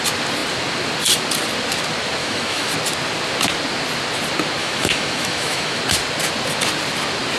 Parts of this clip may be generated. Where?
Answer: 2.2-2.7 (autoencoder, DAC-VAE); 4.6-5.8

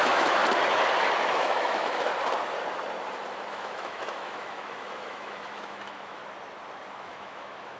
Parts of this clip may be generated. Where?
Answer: 0.0-0.4 (autoencoder, DAC-VAE); 1.4-2.1; 3.5-6.2; 6.9-7.8

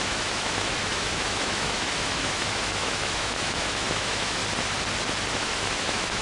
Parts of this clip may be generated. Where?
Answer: 0.0-4.4 (autoencoder, DAC-VAE); 5.3-6.2

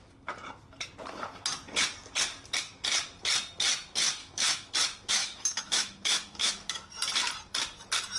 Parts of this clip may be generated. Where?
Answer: 4.2-4.7 (autoencoder, DAC-VAE); 5.2-6.9

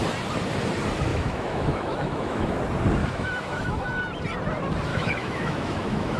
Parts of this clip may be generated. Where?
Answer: 1.1-2.6 (autoencoder, DAC-VAE); 3.0-4.0; 4.9-6.2